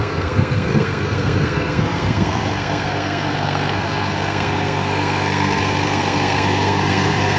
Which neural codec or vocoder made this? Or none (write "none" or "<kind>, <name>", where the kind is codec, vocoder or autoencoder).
codec, SNAC